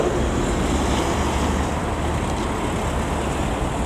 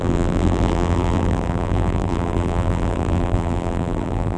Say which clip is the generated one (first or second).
second